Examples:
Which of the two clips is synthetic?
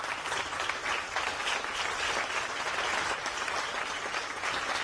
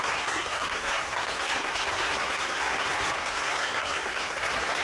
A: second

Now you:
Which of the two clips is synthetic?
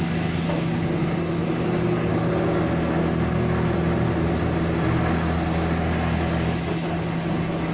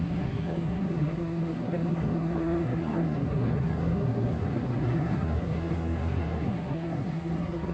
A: second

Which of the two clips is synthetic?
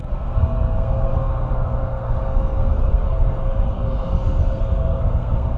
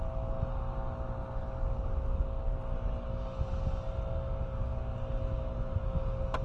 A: first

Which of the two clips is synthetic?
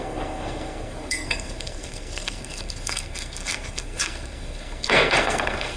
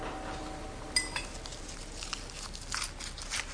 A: first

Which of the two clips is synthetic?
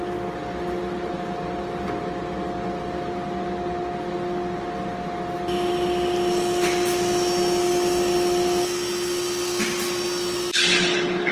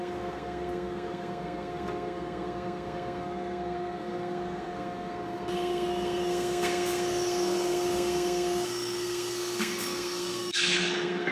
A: second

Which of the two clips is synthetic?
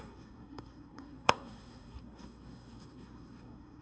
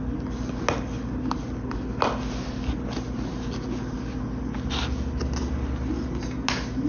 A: first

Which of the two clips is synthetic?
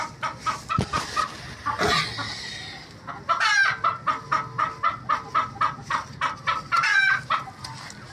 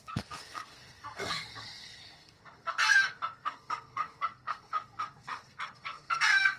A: second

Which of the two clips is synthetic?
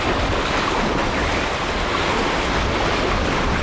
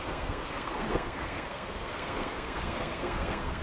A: second